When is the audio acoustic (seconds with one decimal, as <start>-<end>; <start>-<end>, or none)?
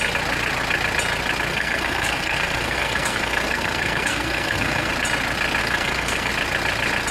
0.0-1.5; 4.9-5.6; 6.3-7.1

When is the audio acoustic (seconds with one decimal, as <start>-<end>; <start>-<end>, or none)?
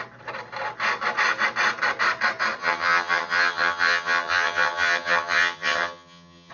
0.0-2.6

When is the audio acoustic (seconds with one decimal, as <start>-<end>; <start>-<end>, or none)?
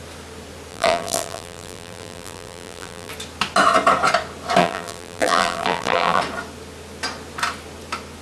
0.0-0.7; 3.1-4.6; 6.2-8.2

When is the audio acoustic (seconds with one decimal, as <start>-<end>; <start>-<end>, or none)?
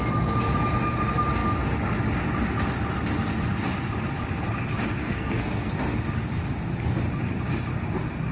0.0-5.0; 5.7-8.3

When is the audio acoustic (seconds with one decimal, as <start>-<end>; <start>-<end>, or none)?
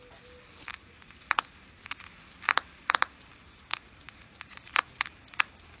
0.0-0.7; 1.6-3.7; 4.7-5.8